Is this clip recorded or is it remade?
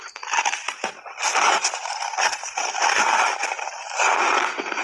recorded